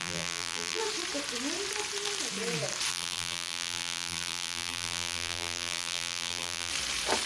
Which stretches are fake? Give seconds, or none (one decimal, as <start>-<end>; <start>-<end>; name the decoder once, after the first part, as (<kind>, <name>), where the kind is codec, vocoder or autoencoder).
0.0-0.8 (vocoder, BigVGAN v2); 2.9-6.7